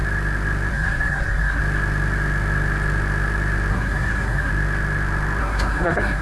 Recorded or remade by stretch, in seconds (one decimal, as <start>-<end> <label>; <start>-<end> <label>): 0.0-0.7 recorded; 0.7-1.6 remade; 1.6-3.7 recorded; 3.7-4.5 remade; 4.5-5.4 recorded; 5.4-6.2 remade